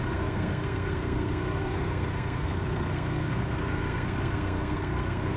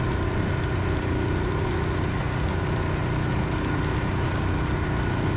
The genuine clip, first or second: second